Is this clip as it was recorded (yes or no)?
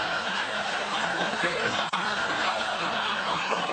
no